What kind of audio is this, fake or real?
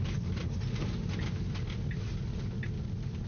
real